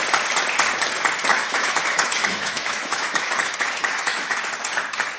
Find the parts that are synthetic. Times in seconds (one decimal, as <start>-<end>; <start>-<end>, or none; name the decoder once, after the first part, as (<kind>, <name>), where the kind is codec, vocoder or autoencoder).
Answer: 1.3-4.4 (autoencoder, DAC-VAE)